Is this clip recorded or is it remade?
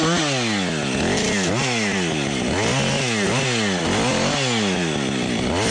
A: recorded